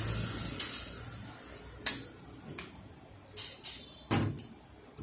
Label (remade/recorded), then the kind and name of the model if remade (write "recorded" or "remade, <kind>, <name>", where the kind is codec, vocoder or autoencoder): recorded